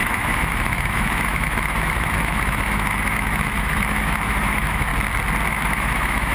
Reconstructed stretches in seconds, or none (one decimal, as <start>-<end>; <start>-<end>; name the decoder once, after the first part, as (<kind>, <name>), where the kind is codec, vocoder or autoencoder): 0.0-4.9 (autoencoder, DAC-VAE); 5.5-6.3